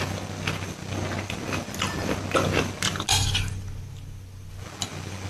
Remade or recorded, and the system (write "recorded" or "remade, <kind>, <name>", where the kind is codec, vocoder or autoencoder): recorded